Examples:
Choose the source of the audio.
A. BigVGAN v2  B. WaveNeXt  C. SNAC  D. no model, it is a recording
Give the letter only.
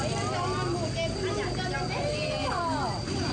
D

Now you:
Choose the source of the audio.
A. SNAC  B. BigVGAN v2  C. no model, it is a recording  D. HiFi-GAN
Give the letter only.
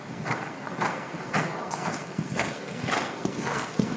A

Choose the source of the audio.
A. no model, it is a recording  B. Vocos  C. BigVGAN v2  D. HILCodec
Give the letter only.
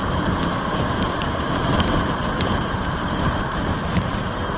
C